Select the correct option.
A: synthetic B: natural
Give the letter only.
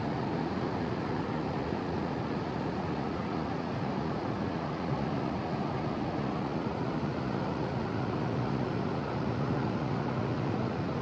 A